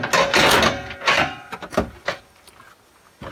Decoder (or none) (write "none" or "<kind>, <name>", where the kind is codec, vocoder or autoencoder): none